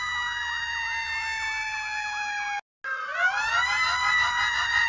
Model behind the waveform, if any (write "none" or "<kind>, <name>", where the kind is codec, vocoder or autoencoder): none